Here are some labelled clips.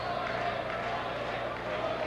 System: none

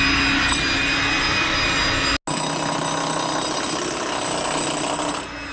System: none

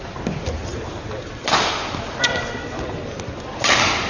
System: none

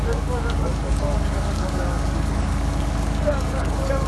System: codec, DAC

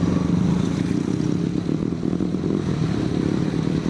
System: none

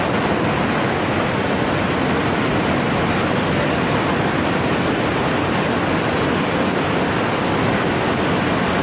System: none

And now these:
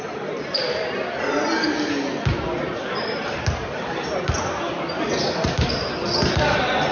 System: none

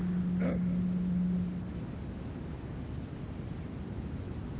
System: none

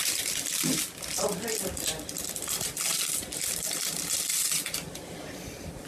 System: none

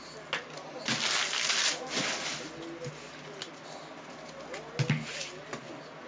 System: none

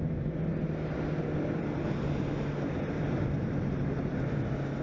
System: none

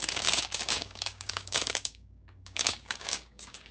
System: codec, DAC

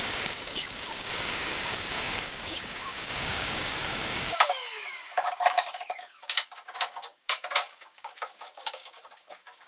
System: codec, DAC